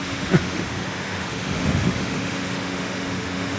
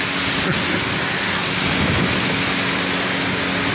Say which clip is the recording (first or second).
second